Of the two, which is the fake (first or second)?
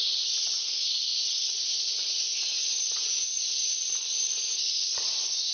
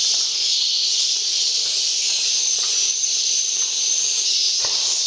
first